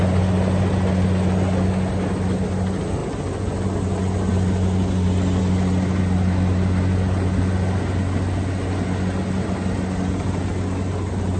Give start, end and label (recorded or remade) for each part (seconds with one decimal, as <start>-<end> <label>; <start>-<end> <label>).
0.0-11.4 recorded